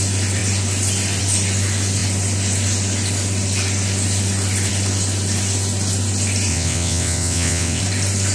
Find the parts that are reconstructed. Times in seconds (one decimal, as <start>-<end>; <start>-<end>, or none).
6.5-7.8